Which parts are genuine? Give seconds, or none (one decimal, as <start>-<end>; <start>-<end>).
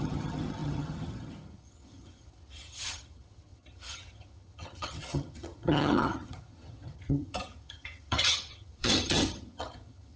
none